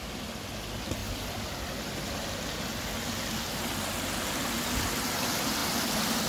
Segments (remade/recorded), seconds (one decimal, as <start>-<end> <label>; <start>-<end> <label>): 0.0-5.6 recorded; 5.6-6.3 remade